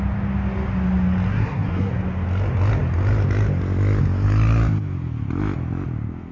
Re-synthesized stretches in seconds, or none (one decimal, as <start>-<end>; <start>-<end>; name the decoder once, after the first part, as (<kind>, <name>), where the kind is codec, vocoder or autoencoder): 1.3-1.9 (codec, SNAC)